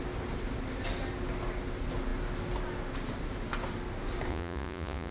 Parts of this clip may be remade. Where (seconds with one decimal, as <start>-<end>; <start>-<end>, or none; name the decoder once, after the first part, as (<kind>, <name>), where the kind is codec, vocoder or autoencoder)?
4.3-5.1 (vocoder, Vocos)